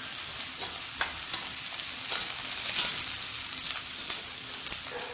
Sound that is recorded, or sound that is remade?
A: recorded